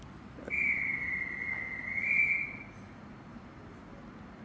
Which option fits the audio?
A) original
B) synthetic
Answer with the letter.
A